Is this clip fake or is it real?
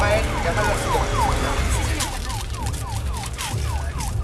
real